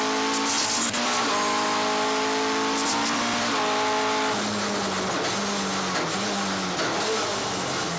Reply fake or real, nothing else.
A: real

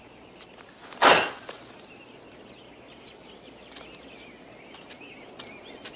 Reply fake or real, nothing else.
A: real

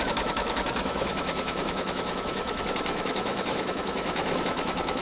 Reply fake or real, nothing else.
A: fake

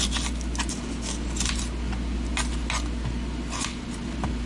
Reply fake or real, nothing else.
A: real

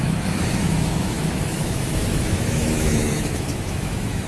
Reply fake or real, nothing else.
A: fake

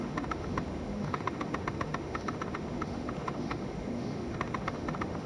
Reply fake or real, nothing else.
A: fake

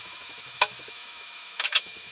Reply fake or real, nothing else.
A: fake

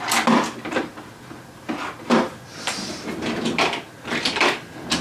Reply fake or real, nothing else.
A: real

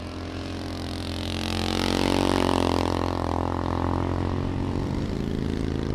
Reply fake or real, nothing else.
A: real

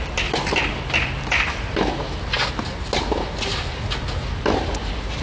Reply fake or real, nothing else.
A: real